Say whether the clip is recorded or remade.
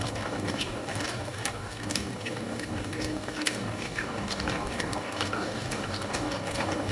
remade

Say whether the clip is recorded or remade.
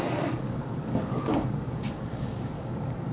remade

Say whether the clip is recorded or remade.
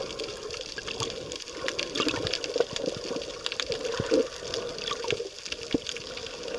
recorded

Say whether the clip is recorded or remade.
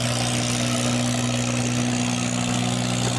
recorded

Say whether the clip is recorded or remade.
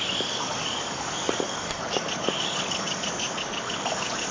remade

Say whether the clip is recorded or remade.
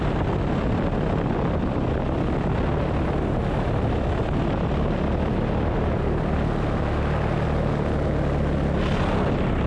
recorded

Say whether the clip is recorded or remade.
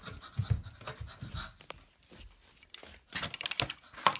recorded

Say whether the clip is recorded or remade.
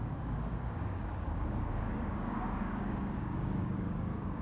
remade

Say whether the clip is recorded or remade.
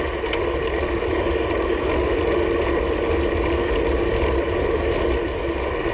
recorded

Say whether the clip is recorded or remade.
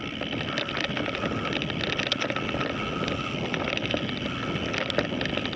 recorded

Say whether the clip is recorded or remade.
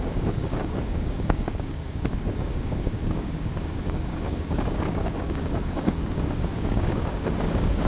remade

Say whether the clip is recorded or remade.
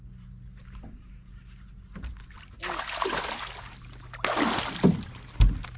recorded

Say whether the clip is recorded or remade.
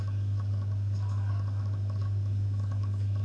remade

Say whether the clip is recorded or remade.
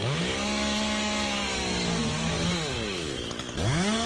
remade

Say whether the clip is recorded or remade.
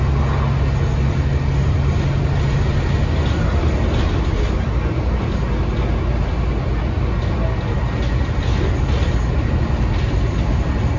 recorded